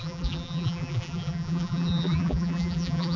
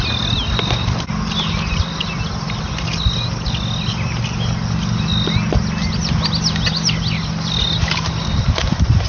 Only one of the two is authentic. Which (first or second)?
second